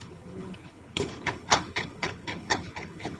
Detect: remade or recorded remade